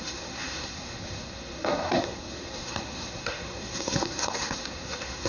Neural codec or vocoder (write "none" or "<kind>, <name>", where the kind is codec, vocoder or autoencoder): codec, SNAC